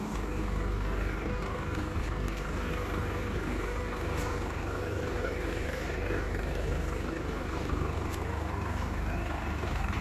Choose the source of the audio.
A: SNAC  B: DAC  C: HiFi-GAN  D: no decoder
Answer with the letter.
B